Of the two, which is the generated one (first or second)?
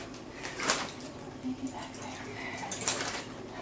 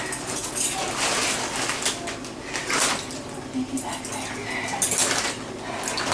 first